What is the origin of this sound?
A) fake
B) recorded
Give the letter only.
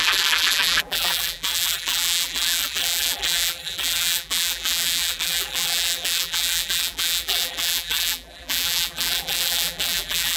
A